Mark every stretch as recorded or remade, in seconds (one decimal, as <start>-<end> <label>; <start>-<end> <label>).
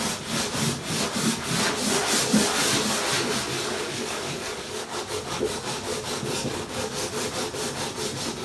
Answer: 0.0-3.7 recorded; 3.7-7.1 remade; 7.1-8.4 recorded